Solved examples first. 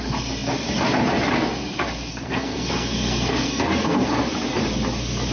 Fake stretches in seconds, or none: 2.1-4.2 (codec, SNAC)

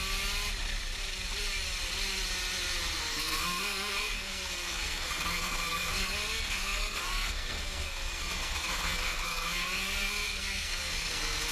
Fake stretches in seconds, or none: 3.0-11.5 (codec, SNAC)